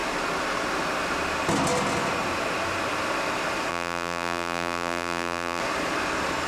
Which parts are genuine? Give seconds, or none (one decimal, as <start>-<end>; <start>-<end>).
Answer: 0.0-3.7; 5.6-6.5